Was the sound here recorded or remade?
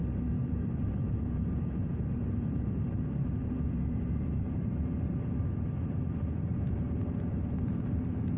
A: remade